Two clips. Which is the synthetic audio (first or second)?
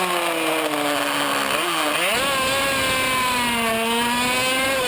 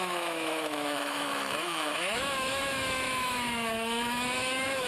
second